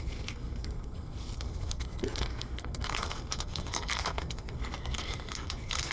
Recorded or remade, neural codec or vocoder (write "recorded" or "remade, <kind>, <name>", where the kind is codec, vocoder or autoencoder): remade, codec, SNAC